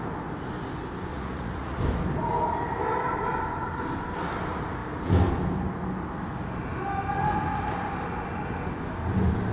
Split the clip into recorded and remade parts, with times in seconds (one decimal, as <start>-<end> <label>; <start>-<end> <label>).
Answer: 0.0-1.1 recorded; 1.1-1.8 remade; 1.8-9.5 recorded